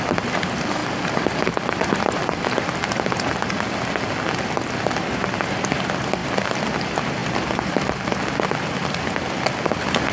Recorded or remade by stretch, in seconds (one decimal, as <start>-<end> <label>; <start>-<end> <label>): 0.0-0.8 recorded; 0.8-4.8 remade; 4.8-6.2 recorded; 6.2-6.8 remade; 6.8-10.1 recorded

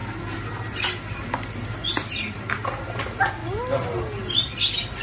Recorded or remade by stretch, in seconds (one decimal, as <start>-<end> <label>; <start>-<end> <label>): 0.0-3.0 recorded; 3.0-3.4 remade; 3.4-4.6 recorded; 4.6-5.0 remade

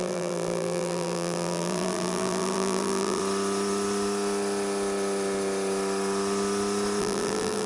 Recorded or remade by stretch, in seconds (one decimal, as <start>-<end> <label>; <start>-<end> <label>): 0.0-3.2 remade; 3.2-7.0 recorded; 7.0-7.7 remade

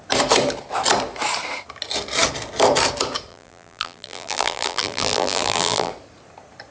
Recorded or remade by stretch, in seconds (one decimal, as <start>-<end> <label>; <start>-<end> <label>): 0.0-3.3 recorded; 3.3-5.9 remade; 5.9-6.7 recorded

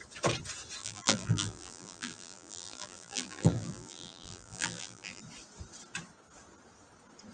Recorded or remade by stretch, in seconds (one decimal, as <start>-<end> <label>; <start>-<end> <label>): 0.0-0.8 recorded; 0.8-5.2 remade; 5.2-7.3 recorded

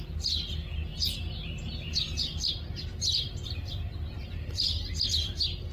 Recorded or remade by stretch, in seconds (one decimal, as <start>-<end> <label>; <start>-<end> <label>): 0.0-0.9 recorded; 0.9-4.3 remade; 4.3-5.7 recorded

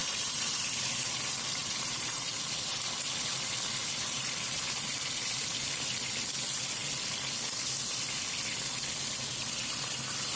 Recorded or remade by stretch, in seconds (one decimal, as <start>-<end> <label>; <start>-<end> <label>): 0.0-0.6 remade; 0.6-1.6 recorded; 1.6-2.3 remade; 2.3-3.8 recorded; 3.8-4.3 remade; 4.3-10.4 recorded